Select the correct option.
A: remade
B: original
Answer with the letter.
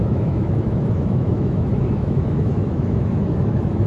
A